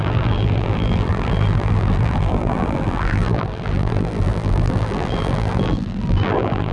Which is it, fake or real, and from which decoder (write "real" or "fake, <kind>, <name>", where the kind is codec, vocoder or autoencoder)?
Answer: fake, vocoder, BigVGAN v2